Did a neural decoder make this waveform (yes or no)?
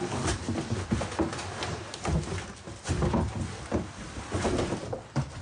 no